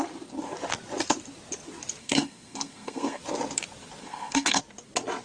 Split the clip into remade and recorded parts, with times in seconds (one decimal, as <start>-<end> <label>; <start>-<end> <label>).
0.0-2.0 recorded; 2.0-3.2 remade; 3.2-4.0 recorded; 4.0-4.6 remade; 4.6-5.2 recorded